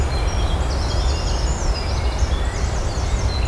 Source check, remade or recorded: recorded